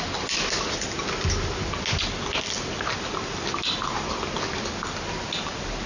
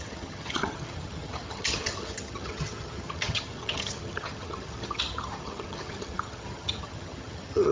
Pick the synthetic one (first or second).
second